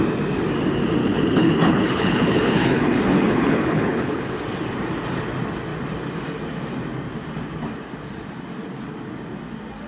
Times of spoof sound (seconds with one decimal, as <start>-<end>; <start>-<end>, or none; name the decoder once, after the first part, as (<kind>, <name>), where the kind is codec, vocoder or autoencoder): 1.0-4.4 (codec, HILCodec)